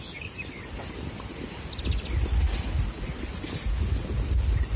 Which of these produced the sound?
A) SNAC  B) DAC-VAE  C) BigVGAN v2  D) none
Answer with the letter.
D